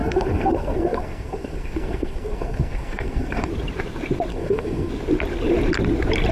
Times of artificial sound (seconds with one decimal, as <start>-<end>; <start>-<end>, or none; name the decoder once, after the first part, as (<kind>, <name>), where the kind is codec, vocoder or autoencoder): 0.0-3.5 (codec, SNAC); 4.3-4.9